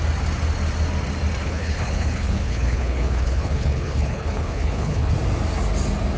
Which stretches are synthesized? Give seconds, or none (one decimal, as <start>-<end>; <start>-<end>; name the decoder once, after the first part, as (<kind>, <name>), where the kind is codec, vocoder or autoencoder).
1.4-5.1 (codec, HILCodec)